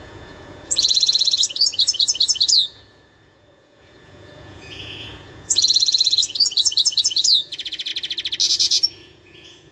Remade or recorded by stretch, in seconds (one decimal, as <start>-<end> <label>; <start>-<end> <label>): 0.0-7.9 remade; 7.9-8.5 recorded; 8.5-9.7 remade